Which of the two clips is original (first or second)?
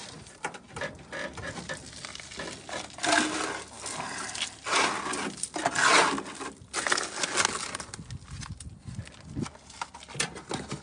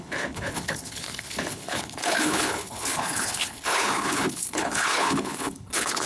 first